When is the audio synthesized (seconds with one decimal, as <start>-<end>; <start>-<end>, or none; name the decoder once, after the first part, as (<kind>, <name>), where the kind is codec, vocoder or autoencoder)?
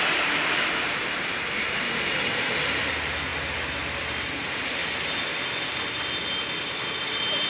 0.0-3.3 (vocoder, BigVGAN v2); 4.0-4.8; 6.6-7.5